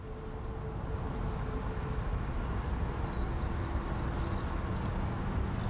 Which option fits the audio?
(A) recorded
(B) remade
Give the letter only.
A